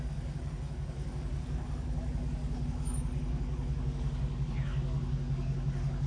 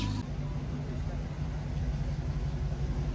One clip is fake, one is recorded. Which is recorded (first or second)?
second